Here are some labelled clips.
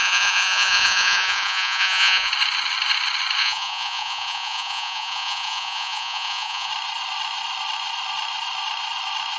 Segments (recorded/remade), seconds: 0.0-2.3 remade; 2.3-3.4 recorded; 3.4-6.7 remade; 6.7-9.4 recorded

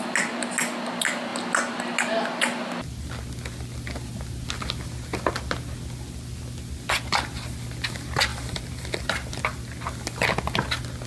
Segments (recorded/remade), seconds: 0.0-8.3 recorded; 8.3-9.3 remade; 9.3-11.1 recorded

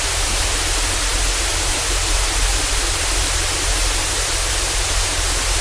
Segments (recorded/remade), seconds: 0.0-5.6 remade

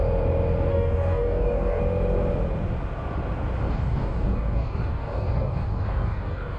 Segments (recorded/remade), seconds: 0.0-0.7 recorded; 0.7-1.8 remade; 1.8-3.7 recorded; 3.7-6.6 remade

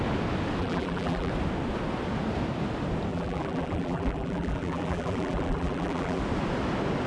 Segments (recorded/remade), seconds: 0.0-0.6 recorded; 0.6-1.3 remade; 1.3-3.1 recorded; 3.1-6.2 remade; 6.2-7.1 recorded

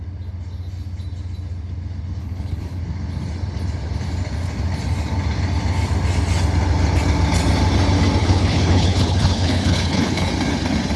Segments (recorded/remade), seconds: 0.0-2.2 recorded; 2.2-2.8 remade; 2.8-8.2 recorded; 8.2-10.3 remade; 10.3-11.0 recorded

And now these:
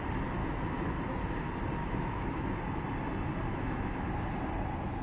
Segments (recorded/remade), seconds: 0.0-0.4 recorded; 0.4-1.0 remade; 1.0-1.8 recorded; 1.8-2.6 remade; 2.6-3.5 recorded; 3.5-4.1 remade; 4.1-5.0 recorded

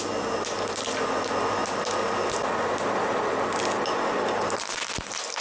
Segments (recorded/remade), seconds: 0.0-5.4 recorded